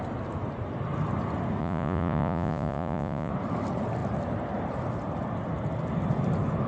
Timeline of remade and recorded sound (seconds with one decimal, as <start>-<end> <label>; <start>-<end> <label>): 0.0-1.6 recorded; 1.6-3.3 remade; 3.3-6.7 recorded